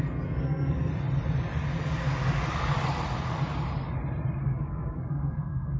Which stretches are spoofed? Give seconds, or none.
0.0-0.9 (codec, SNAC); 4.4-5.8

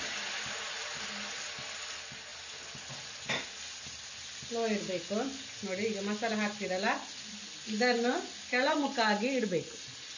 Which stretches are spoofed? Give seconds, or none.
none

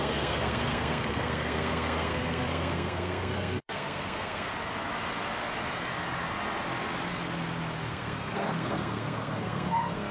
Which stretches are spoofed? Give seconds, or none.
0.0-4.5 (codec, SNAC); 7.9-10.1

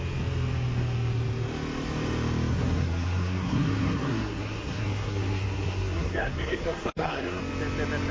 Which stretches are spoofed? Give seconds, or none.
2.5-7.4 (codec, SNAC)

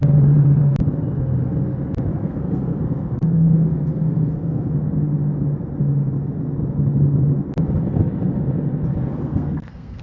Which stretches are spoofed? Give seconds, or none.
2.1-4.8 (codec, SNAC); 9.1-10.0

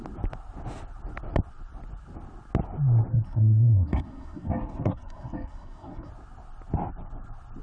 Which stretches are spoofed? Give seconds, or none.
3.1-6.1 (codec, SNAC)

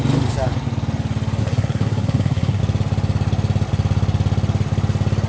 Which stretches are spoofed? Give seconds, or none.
1.4-2.6 (codec, SNAC)

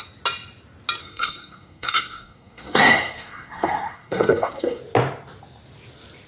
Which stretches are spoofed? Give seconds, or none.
1.0-4.8 (codec, SNAC)